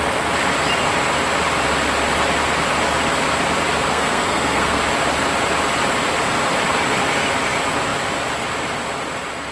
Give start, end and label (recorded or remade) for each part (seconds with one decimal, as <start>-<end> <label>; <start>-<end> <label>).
0.0-3.9 recorded; 3.9-4.8 remade; 4.8-9.5 recorded